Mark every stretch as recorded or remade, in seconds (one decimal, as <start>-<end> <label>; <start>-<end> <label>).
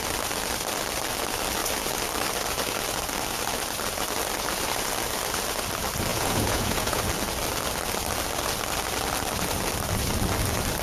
0.0-6.1 recorded; 6.1-7.0 remade; 7.0-10.8 recorded